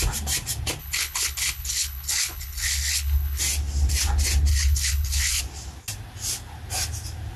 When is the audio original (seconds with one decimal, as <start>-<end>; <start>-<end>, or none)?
0.0-0.8; 3.4-4.5; 5.4-7.4